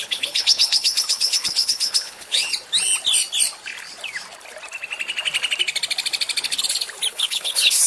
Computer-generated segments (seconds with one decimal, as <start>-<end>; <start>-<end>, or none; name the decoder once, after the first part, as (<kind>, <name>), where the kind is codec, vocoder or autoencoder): 0.0-2.5 (codec, HILCodec); 7.1-7.9